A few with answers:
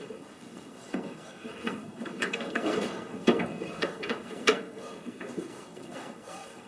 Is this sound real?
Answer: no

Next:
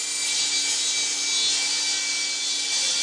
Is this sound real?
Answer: yes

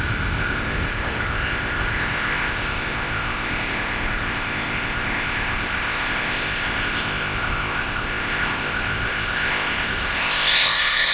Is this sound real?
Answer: no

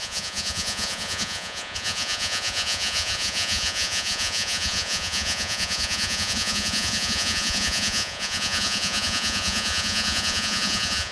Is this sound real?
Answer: no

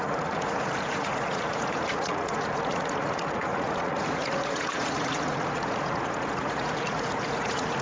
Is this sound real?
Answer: no